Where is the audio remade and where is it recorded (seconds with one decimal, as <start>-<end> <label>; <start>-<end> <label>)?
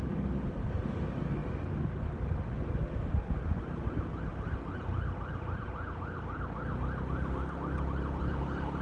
0.0-8.8 recorded